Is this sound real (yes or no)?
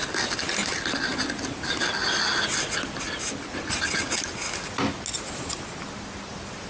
yes